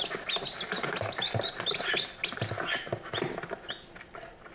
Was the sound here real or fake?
real